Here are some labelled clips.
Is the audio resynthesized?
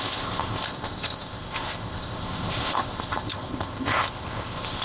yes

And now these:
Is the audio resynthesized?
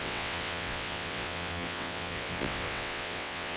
yes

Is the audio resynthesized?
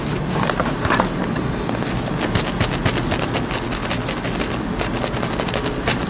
no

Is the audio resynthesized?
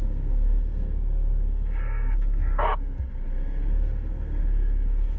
yes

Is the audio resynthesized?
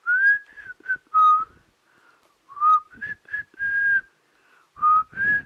no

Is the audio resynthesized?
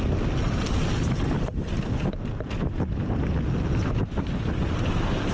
no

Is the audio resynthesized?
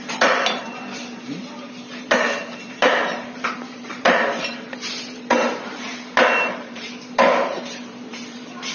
yes